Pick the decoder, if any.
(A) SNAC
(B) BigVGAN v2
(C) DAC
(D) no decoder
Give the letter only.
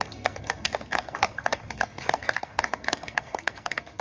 A